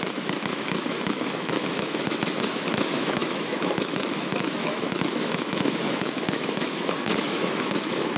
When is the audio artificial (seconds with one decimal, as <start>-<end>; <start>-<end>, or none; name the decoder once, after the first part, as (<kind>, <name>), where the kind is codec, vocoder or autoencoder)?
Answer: 0.0-8.2 (autoencoder, DAC-VAE)